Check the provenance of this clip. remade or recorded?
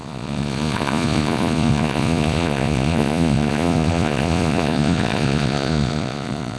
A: remade